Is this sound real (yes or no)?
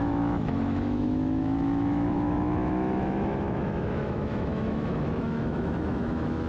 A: no